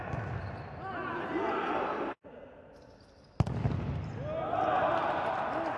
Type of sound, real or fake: real